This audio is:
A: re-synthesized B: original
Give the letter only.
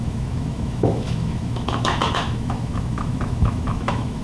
A